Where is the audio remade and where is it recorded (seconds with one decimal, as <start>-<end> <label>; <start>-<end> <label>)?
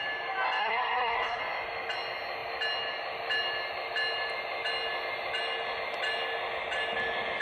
0.0-0.6 recorded; 0.6-1.4 remade; 1.4-7.4 recorded